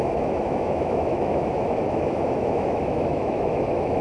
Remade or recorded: remade